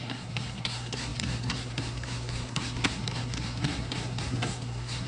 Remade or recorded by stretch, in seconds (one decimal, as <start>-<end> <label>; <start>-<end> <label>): 0.0-5.1 remade